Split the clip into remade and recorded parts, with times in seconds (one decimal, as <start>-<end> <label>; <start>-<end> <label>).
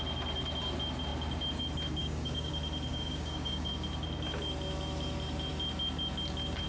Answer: 0.0-2.0 recorded; 2.0-2.5 remade; 2.5-2.9 recorded; 2.9-3.7 remade; 3.7-6.7 recorded